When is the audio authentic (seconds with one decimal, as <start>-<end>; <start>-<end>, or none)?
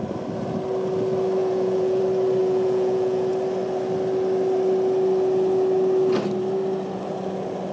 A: 0.0-1.4; 2.0-2.4; 3.3-7.7